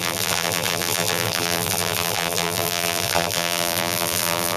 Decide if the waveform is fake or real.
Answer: fake